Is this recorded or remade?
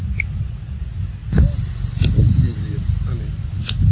recorded